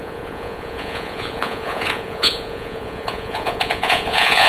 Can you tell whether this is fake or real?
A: fake